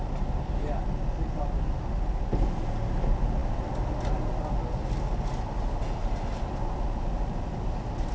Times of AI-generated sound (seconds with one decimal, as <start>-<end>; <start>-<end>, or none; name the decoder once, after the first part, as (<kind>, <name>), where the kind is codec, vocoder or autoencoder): none